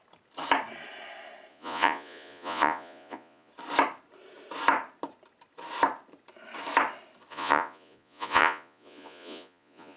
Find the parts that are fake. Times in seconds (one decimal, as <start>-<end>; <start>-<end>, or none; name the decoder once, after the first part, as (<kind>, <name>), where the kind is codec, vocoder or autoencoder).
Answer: 1.5-3.5 (vocoder, Vocos); 7.3-10.0